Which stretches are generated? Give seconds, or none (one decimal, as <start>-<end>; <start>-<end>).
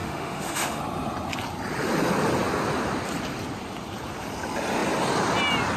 0.0-0.8